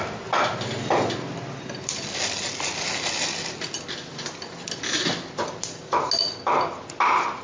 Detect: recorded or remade recorded